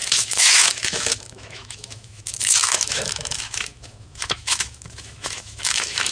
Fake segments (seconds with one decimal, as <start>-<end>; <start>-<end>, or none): 0.0-6.1